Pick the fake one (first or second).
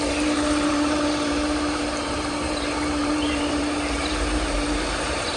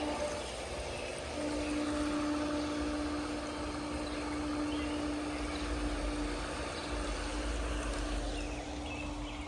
first